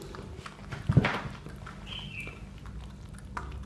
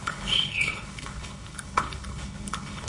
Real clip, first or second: first